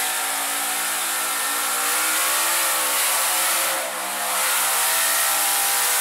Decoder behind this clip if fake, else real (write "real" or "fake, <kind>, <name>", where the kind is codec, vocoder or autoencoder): real